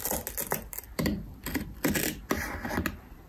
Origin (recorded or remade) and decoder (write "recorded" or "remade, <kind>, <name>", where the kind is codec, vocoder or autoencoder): recorded